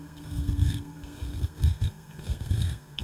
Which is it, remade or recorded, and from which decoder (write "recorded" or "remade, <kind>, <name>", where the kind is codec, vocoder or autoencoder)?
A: remade, codec, SNAC